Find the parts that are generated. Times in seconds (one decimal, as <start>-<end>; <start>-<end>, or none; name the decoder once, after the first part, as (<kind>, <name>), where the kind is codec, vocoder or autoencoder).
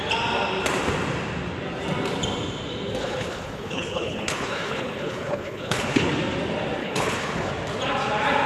3.0-6.1 (codec, HILCodec); 6.8-7.5